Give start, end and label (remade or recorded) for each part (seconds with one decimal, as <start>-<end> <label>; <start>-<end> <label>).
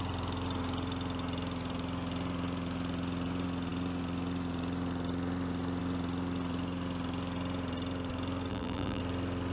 0.0-8.5 recorded; 8.5-9.0 remade; 9.0-9.5 recorded